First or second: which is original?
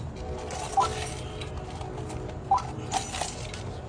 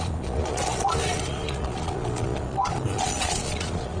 first